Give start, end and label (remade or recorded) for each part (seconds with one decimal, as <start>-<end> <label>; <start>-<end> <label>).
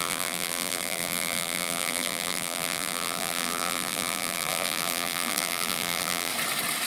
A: 0.0-6.3 remade; 6.3-6.9 recorded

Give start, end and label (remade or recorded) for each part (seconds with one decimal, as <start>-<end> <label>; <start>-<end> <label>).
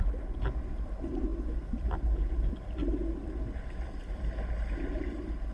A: 0.0-5.5 recorded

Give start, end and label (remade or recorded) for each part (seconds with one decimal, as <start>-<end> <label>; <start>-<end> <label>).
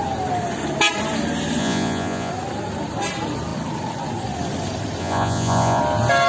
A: 0.0-1.6 recorded; 1.6-2.3 remade; 2.3-5.0 recorded; 5.0-5.8 remade; 5.8-6.3 recorded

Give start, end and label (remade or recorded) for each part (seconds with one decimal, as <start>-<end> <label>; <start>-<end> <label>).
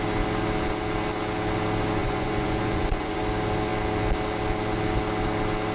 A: 0.0-2.0 recorded; 2.0-3.2 remade; 3.2-5.7 recorded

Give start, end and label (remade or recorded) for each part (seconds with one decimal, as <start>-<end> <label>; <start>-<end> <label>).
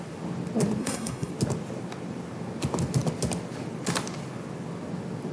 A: 0.0-0.8 recorded; 0.8-1.3 remade; 1.3-5.3 recorded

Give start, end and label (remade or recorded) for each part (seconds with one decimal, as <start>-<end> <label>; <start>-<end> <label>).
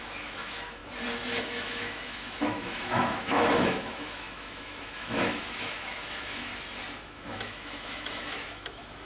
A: 0.0-0.8 remade; 0.8-1.4 recorded; 1.4-6.5 remade; 6.5-7.0 recorded; 7.0-9.1 remade